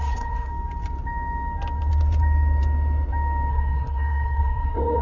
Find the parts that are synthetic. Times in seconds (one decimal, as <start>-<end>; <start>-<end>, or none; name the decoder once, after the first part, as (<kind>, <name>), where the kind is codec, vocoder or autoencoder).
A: 0.0-0.5 (codec, SNAC); 3.5-5.0